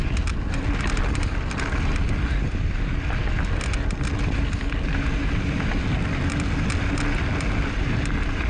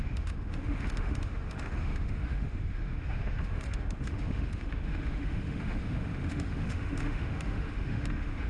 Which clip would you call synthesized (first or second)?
second